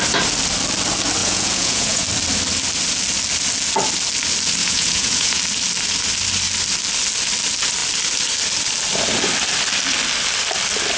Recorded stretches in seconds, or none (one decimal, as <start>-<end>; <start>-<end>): 0.0-1.2; 2.0-4.6; 5.4-11.0